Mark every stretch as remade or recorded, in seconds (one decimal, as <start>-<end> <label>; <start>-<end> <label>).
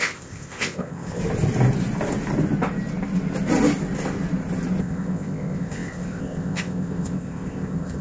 0.0-1.2 remade; 1.2-4.8 recorded; 4.8-8.0 remade